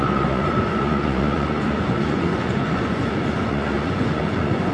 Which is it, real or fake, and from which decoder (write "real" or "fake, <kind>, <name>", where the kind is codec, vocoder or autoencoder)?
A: fake, vocoder, Vocos